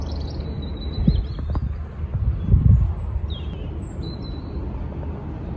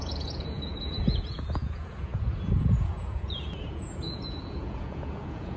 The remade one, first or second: second